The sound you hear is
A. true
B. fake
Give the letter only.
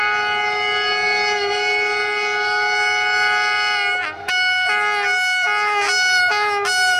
A